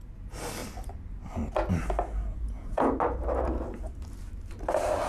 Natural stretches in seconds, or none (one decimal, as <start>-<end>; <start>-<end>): 0.0-2.3; 2.9-5.1